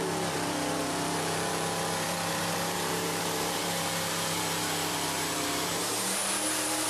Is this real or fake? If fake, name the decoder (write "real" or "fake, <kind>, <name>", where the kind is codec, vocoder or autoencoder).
fake, vocoder, BigVGAN v2